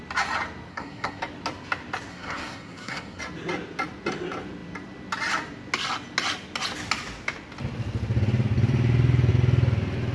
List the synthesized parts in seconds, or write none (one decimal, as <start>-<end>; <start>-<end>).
0.7-1.2; 2.1-3.2